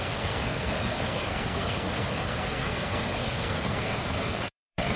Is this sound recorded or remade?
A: remade